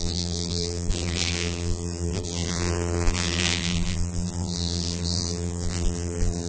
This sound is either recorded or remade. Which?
remade